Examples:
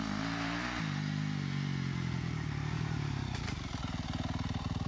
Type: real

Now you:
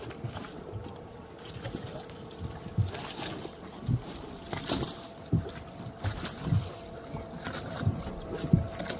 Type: real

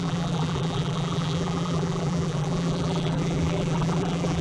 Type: fake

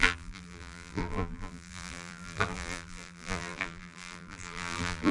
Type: fake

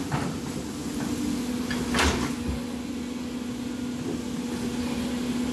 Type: real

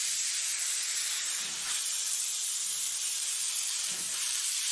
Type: fake